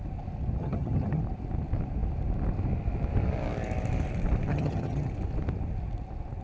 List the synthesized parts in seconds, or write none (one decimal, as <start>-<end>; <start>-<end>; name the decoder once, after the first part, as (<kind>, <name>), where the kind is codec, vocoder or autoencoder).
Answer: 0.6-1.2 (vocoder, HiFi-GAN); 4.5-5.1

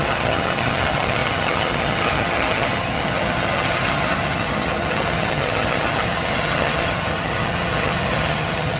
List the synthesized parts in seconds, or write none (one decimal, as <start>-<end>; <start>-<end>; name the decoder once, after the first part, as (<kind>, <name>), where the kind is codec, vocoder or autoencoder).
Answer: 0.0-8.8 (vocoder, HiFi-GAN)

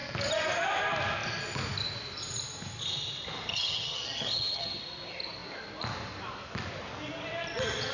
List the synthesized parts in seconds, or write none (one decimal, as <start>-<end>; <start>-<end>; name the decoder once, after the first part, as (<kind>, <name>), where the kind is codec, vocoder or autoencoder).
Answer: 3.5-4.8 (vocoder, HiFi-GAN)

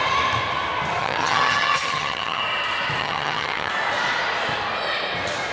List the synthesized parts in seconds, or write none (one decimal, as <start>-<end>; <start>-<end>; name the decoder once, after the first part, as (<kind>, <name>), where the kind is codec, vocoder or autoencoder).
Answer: 1.0-2.4 (vocoder, HiFi-GAN); 3.0-3.7

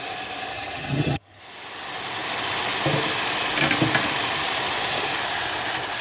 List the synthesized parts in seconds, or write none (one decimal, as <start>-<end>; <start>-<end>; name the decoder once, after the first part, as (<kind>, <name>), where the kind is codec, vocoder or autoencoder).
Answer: 0.5-1.4 (vocoder, HiFi-GAN)